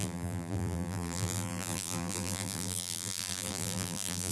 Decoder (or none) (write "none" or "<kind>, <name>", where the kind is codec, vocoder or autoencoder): vocoder, BigVGAN v2